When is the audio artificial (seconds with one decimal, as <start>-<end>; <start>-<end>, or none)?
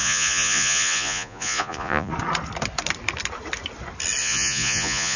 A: 0.0-2.1; 4.2-5.2